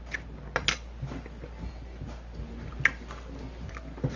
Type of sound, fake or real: real